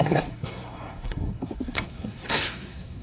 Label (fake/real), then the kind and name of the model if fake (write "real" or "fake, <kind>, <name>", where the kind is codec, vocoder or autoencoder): fake, codec, SNAC